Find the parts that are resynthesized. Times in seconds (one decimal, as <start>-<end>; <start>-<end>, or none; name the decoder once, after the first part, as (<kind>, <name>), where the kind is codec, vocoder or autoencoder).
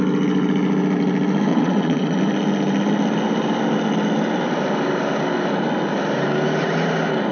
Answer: 1.5-2.2 (vocoder, Vocos)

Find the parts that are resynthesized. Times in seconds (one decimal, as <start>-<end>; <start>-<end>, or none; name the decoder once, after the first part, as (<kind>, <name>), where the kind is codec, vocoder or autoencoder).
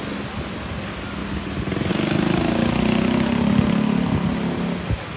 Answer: none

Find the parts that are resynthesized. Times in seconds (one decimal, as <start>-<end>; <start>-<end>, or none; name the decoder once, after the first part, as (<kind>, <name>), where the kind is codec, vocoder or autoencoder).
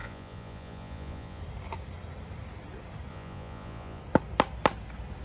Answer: 0.0-1.4 (vocoder, Vocos); 3.1-4.0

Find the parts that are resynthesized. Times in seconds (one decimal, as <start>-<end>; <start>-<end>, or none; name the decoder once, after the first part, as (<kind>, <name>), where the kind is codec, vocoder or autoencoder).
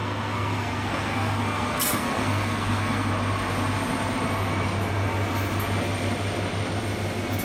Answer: 0.0-3.1 (codec, SNAC)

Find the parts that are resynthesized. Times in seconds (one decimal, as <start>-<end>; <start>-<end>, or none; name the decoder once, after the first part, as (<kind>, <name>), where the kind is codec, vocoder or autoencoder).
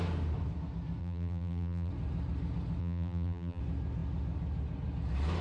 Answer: 1.0-1.9 (vocoder, BigVGAN v2); 2.8-3.6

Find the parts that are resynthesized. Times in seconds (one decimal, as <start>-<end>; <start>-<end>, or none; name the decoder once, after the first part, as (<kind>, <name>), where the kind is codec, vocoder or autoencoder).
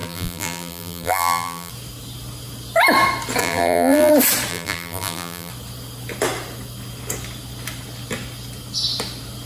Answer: 0.0-1.7 (vocoder, BigVGAN v2); 3.4-4.1; 4.5-5.5